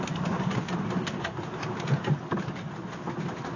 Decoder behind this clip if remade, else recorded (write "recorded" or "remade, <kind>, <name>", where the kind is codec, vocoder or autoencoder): recorded